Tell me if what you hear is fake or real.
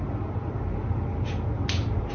real